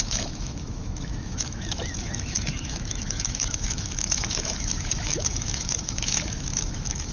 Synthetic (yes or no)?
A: yes